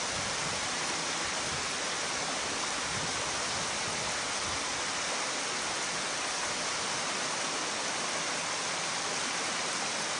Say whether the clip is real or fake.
real